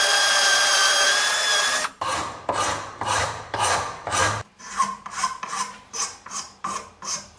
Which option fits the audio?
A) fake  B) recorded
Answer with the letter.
A